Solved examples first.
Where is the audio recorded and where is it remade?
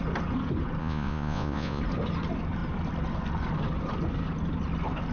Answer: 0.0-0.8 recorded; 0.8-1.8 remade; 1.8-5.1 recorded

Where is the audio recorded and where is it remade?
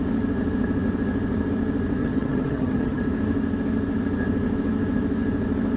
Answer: 0.0-2.0 recorded; 2.0-3.0 remade; 3.0-5.8 recorded